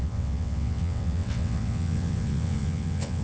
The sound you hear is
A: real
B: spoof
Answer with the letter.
B